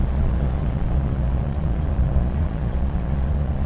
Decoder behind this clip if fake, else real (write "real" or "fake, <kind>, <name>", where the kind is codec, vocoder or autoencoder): fake, vocoder, Vocos